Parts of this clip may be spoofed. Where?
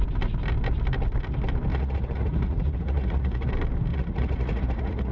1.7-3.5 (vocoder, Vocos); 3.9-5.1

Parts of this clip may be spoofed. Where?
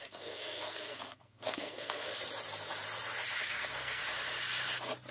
0.0-2.1 (codec, SNAC); 3.4-4.0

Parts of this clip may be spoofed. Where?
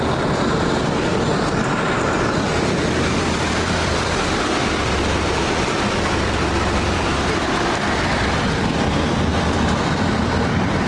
0.0-10.9 (vocoder, BigVGAN v2)